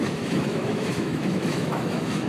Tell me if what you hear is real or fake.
fake